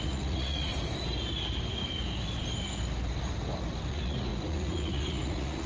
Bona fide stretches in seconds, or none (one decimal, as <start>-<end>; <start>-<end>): 0.7-3.9